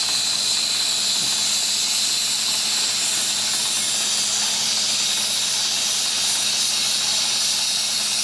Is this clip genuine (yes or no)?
yes